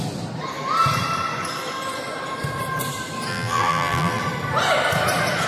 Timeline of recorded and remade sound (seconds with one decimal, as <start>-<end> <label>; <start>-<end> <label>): 0.0-3.3 recorded; 3.3-4.2 remade; 4.2-5.5 recorded